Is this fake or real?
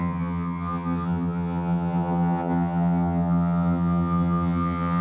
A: fake